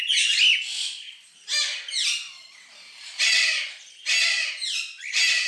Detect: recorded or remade recorded